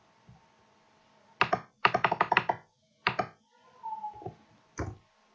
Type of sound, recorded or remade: recorded